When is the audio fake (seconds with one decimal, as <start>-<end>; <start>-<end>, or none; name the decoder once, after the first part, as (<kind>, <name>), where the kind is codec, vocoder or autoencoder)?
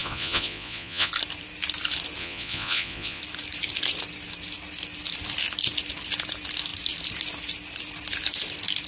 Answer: 0.0-1.1 (vocoder, Vocos); 2.2-3.2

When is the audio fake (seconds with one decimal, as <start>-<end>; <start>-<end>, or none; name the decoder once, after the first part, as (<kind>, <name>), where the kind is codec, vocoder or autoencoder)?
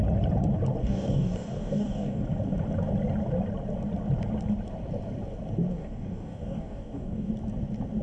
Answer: 0.8-2.2 (codec, DAC); 5.7-7.3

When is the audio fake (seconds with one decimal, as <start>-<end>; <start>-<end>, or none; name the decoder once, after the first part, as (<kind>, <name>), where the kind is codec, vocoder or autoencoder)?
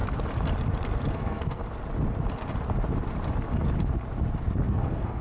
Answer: 1.1-1.6 (codec, SNAC); 4.7-5.2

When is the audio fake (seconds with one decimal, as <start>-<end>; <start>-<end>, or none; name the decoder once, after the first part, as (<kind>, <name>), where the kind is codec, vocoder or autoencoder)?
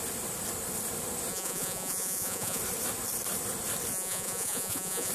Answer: 1.3-2.6 (vocoder, Vocos); 3.9-5.1